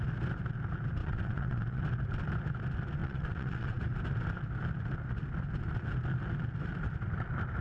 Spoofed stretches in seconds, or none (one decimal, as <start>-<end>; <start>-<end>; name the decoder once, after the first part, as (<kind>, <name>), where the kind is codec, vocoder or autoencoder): 1.0-1.8 (vocoder, WaveNeXt); 3.0-3.8